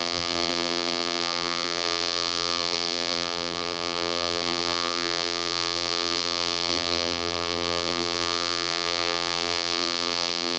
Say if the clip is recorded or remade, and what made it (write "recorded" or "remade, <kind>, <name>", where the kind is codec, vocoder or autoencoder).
remade, vocoder, BigVGAN v2